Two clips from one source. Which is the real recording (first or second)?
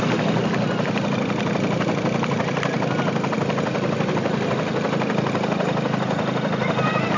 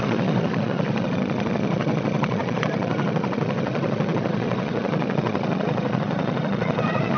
first